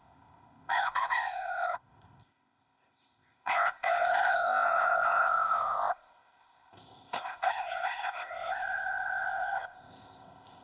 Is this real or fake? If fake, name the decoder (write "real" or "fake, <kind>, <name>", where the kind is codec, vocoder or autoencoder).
fake, codec, ZipCodec